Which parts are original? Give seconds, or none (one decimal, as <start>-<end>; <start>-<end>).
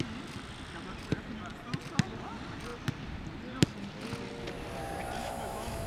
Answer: 0.0-5.2